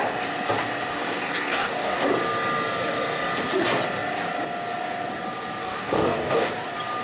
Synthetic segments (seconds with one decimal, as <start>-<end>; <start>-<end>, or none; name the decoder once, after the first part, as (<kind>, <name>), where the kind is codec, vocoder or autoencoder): 0.9-2.1 (codec, DAC); 5.6-6.5